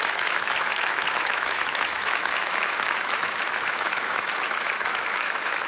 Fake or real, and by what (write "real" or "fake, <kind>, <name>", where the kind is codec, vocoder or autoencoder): fake, autoencoder, DAC-VAE